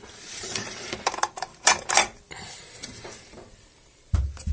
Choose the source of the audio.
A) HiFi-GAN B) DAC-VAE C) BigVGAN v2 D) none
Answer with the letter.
C